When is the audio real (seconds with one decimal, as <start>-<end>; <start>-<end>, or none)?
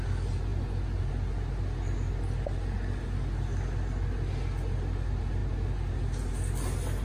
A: 0.0-7.0